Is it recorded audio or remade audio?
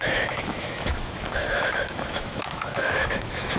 remade